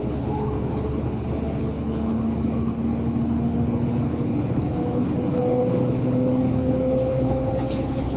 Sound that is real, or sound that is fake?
fake